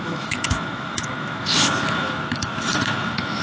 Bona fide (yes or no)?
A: no